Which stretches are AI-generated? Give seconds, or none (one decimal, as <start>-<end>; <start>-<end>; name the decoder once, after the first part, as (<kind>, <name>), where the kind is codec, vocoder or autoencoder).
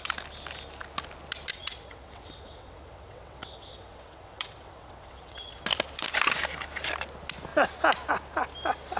1.5-5.6 (vocoder, WaveNeXt)